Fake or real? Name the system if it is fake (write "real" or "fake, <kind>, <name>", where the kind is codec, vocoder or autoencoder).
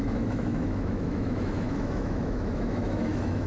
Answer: fake, autoencoder, DAC-VAE